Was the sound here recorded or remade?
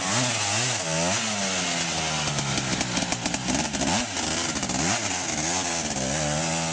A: recorded